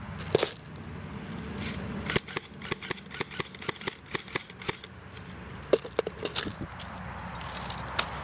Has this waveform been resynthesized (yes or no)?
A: no